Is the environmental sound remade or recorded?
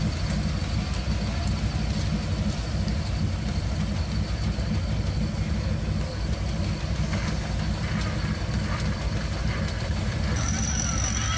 recorded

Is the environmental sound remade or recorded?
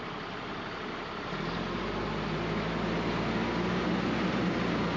recorded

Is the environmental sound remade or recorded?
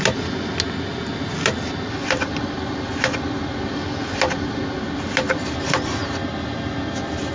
recorded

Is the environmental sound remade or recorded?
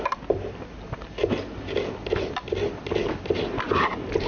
recorded